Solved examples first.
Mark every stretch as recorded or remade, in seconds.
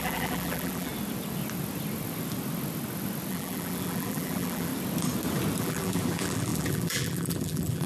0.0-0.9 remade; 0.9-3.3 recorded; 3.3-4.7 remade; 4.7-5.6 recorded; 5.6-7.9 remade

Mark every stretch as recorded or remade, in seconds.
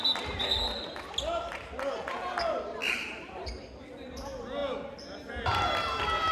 0.0-2.8 recorded; 2.8-3.5 remade; 3.5-6.3 recorded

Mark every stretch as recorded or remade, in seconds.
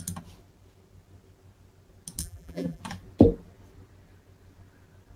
0.0-2.2 recorded; 2.2-2.8 remade; 2.8-5.2 recorded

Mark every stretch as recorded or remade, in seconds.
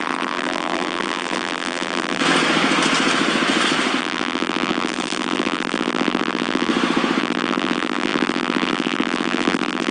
0.0-2.2 remade; 2.2-4.0 recorded; 4.0-6.7 remade; 6.7-7.2 recorded; 7.2-9.9 remade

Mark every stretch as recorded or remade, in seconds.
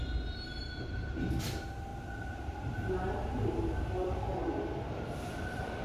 0.0-1.9 recorded; 1.9-4.2 remade; 4.2-5.8 recorded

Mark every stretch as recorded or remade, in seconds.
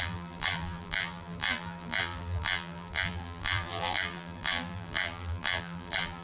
0.0-6.2 remade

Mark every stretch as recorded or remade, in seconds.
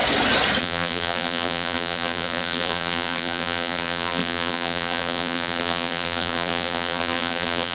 0.0-0.6 recorded; 0.6-7.7 remade